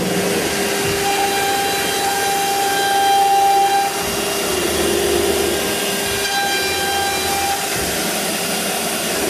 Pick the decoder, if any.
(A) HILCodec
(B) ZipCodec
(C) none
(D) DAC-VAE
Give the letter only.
C